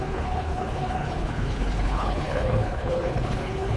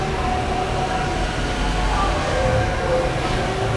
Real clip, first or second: second